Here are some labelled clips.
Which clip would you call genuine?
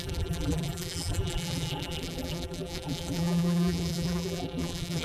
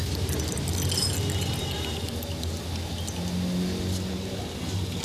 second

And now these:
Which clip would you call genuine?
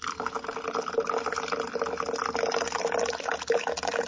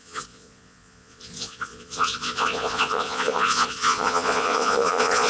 first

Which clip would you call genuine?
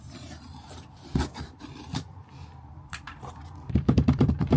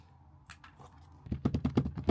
second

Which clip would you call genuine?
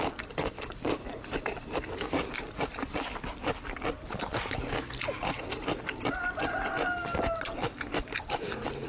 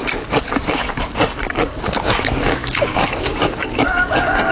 first